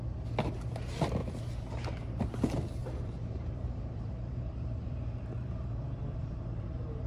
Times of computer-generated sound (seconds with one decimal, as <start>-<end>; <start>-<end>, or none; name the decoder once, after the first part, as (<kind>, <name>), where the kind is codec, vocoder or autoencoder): 2.8-7.1 (vocoder, BigVGAN v2)

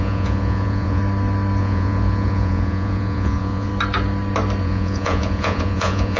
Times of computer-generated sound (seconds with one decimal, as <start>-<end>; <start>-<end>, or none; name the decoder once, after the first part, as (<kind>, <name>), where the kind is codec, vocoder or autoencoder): 0.0-1.0 (vocoder, Vocos); 1.6-3.7; 4.6-6.2

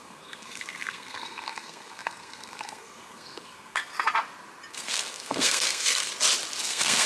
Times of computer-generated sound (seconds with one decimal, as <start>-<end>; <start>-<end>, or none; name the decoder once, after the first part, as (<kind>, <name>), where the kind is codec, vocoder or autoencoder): 0.0-3.9 (codec, SNAC); 4.7-6.1; 6.6-7.1

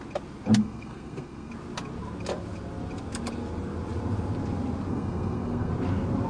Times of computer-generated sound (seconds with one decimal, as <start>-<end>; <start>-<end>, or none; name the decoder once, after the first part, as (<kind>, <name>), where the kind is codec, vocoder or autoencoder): 0.6-1.5 (codec, SNAC); 4.9-5.7